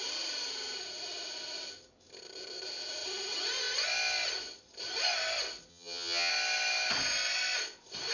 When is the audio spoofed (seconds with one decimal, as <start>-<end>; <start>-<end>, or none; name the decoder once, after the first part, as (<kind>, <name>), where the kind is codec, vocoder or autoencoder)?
5.7-6.3 (vocoder, HiFi-GAN)